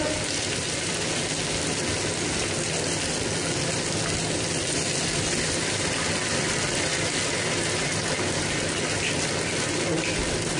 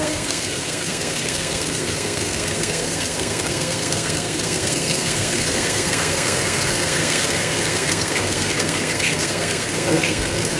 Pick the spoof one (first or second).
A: second